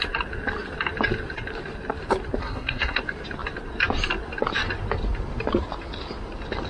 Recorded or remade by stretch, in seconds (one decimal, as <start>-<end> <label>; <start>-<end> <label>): 0.0-2.4 recorded; 2.4-3.0 remade; 3.0-6.7 recorded